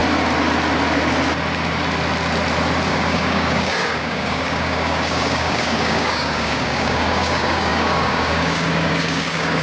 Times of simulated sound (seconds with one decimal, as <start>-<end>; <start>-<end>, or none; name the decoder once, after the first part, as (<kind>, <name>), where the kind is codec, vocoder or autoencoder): 2.9-9.6 (codec, DAC)